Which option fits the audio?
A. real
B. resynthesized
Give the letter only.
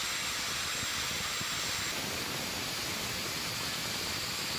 A